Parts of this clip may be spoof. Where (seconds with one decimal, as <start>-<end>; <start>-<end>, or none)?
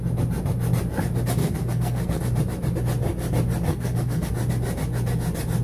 1.4-2.2; 3.7-4.3